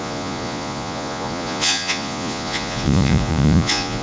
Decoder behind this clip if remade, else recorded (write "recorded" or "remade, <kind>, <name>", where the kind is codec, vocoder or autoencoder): remade, vocoder, Vocos